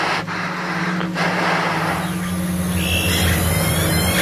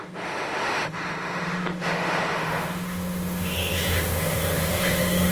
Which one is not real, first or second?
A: second